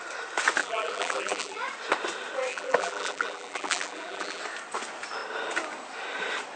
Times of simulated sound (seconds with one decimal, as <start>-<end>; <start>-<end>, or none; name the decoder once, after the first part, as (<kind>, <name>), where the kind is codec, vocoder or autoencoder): 0.6-1.6 (vocoder, BigVGAN v2); 2.5-4.4